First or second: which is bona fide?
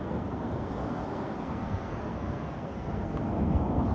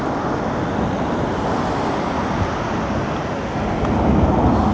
second